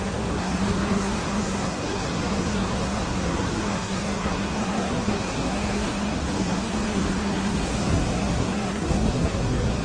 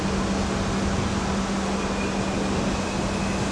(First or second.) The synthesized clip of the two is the first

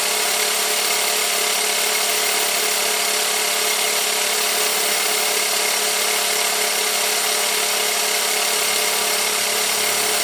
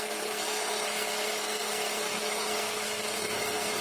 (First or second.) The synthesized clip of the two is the second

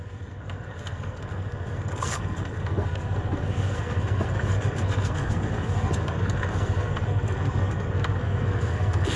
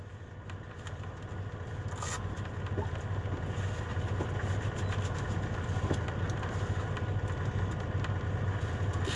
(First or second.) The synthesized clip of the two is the first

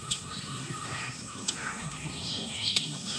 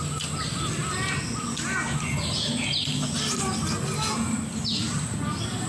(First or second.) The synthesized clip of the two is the first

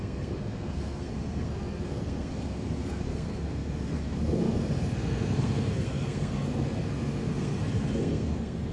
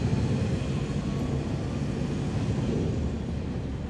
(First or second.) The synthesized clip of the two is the first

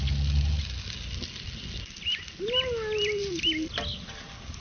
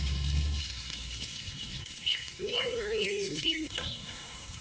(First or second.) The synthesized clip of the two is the second